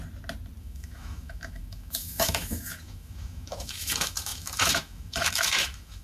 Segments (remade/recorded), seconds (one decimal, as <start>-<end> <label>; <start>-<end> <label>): 0.0-0.6 recorded; 0.6-6.0 remade